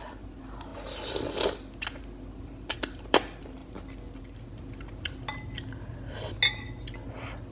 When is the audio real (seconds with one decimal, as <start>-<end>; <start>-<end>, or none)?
0.0-7.5